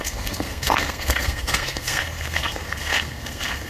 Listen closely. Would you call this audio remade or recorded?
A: remade